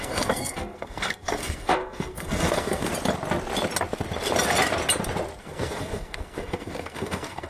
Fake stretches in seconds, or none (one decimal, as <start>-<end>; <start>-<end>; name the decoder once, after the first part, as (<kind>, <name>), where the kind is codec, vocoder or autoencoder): 0.0-2.9 (codec, SNAC); 5.4-7.5